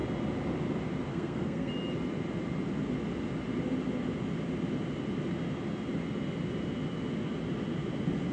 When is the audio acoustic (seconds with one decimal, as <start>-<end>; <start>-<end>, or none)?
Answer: 0.0-1.1; 1.7-8.3